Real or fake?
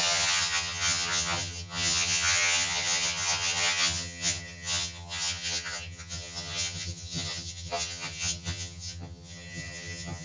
fake